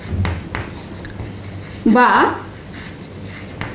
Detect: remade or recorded recorded